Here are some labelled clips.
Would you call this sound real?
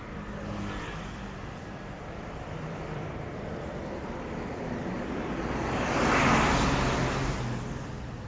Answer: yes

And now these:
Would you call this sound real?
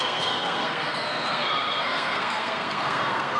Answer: no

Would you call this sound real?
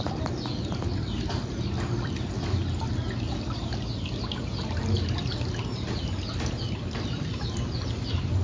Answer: yes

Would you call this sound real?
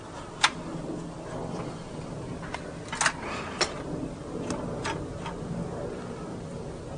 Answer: yes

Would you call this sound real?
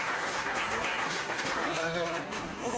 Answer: no